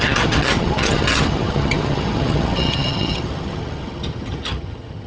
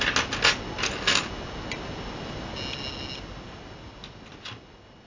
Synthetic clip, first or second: first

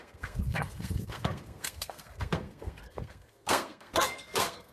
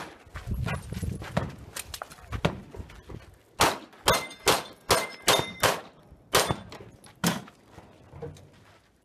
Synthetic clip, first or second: first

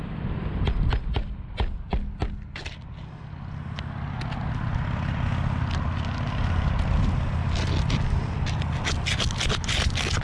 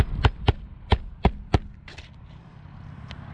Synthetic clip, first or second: second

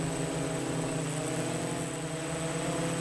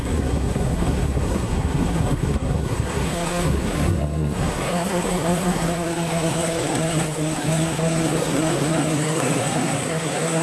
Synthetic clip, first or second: second